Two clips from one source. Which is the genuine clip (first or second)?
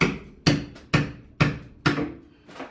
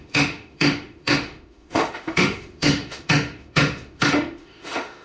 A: first